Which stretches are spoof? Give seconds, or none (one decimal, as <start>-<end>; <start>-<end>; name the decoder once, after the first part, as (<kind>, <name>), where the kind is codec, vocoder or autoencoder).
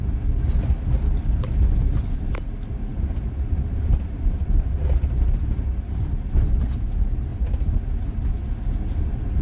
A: 2.9-6.7 (vocoder, BigVGAN v2); 7.3-7.8